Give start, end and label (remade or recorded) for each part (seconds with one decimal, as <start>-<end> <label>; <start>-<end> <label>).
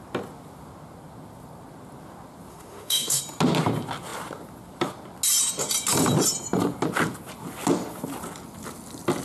0.0-2.5 recorded; 2.5-3.2 remade; 3.2-9.2 recorded